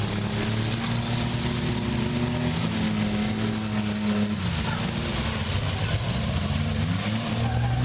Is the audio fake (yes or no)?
no